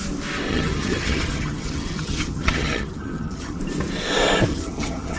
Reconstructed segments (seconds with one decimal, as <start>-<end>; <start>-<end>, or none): 0.5-3.6; 4.5-5.2